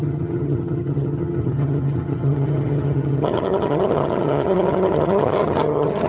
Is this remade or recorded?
remade